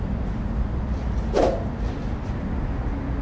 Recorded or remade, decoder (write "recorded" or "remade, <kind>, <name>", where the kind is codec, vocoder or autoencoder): recorded